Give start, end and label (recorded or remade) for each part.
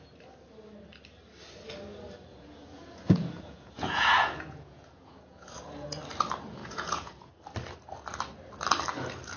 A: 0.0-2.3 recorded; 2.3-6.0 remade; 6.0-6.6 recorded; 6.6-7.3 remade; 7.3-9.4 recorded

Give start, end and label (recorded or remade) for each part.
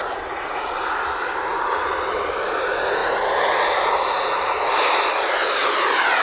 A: 0.0-6.2 recorded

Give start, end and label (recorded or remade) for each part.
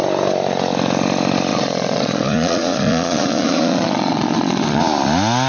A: 0.0-1.5 recorded; 1.5-4.8 remade; 4.8-5.5 recorded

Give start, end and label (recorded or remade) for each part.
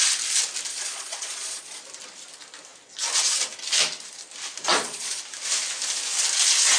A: 0.0-0.7 recorded; 0.7-1.8 remade; 1.8-4.7 recorded; 4.7-5.2 remade; 5.2-6.8 recorded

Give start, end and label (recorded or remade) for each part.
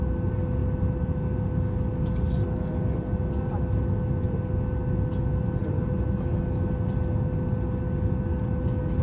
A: 0.0-9.0 recorded